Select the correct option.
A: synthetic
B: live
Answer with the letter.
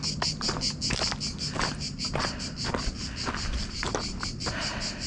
B